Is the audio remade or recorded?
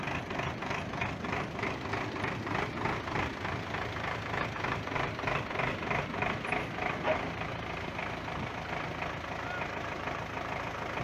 remade